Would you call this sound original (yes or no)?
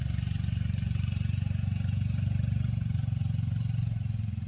yes